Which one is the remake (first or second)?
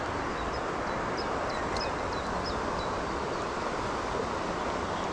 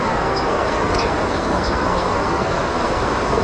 second